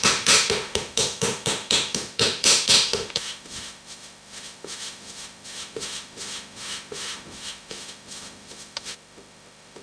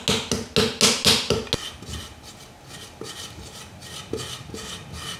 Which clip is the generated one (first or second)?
first